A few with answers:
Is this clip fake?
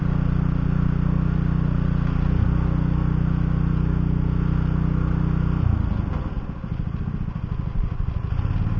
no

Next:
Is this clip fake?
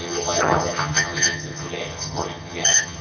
yes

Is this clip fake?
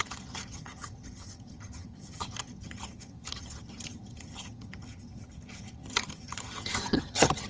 yes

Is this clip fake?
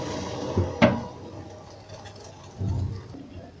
no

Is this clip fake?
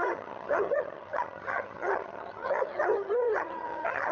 yes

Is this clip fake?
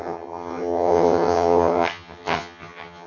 yes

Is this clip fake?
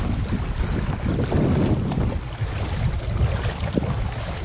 no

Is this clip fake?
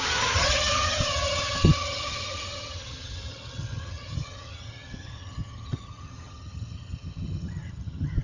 yes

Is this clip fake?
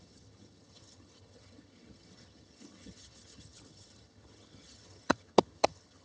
yes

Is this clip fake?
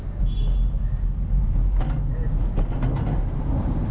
no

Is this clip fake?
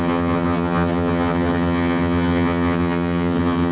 yes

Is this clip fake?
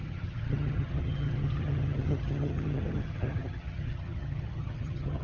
yes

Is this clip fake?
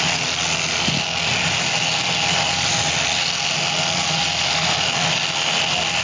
no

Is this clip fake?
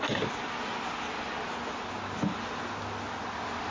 no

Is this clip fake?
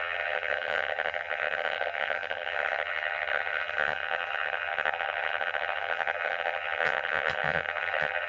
yes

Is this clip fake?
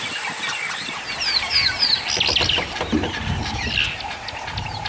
no